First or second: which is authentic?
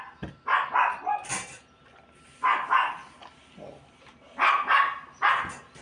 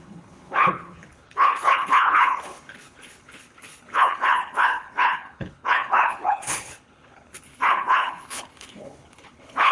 first